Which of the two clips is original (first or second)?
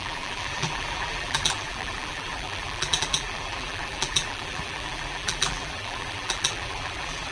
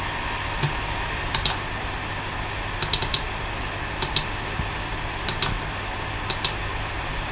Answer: second